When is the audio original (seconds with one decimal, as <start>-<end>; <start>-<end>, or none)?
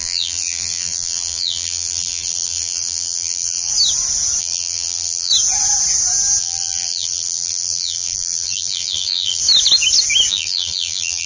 3.7-4.4; 5.3-6.4; 9.4-10.3